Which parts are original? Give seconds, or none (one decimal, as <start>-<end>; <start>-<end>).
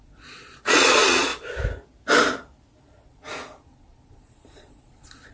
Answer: 1.3-2.8